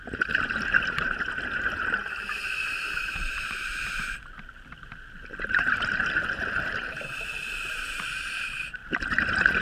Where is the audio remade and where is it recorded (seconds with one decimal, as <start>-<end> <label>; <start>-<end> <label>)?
0.0-3.7 remade; 3.7-5.5 recorded; 5.5-8.8 remade; 8.8-9.6 recorded